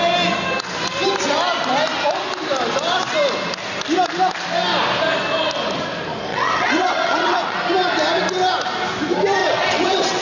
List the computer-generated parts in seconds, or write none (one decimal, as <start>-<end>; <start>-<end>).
6.3-7.6; 9.4-10.2